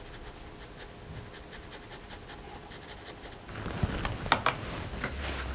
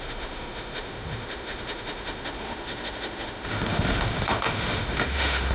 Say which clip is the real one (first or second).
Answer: first